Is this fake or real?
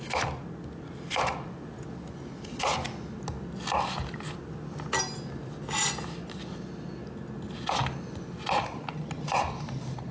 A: real